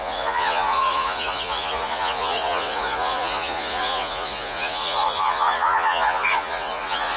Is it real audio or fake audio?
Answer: fake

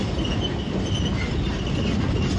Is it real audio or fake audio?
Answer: real